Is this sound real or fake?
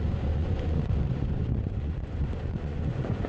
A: fake